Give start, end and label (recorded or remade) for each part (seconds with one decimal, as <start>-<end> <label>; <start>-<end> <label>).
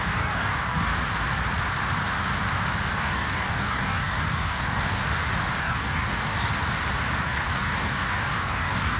0.0-0.9 remade; 0.9-2.9 recorded; 2.9-5.0 remade; 5.0-5.6 recorded; 5.6-6.5 remade; 6.5-7.2 recorded; 7.2-9.0 remade